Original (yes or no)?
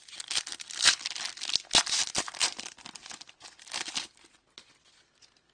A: yes